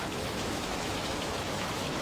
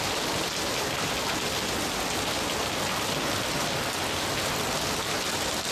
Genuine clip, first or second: second